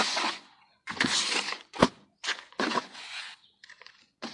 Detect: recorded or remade remade